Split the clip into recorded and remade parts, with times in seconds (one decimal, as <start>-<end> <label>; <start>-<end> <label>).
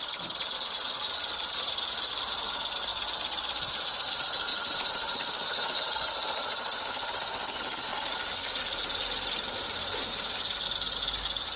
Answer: 0.0-2.9 recorded; 2.9-4.1 remade; 4.1-4.5 recorded; 4.5-5.2 remade; 5.2-11.6 recorded